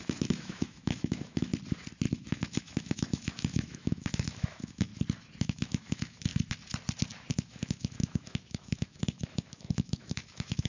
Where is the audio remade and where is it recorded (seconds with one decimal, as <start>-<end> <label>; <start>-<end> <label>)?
0.0-1.5 remade; 1.5-2.1 recorded; 2.1-4.9 remade; 4.9-5.4 recorded; 5.4-6.3 remade; 6.3-7.3 recorded; 7.3-10.7 remade